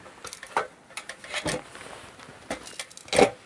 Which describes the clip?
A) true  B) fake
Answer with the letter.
A